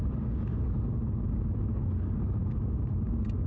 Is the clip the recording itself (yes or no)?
yes